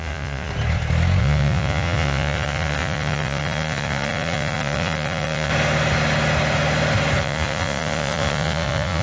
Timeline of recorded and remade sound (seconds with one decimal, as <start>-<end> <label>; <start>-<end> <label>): 0.0-0.5 remade; 0.5-1.2 recorded; 1.2-5.5 remade; 5.5-7.2 recorded; 7.2-9.0 remade